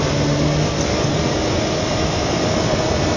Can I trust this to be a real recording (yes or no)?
yes